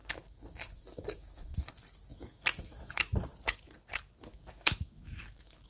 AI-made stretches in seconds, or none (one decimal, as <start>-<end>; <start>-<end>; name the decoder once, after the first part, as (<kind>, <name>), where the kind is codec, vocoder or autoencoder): 0.0-1.7 (autoencoder, DAC-VAE); 2.1-3.2; 4.3-5.7